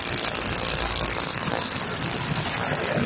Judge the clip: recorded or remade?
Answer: recorded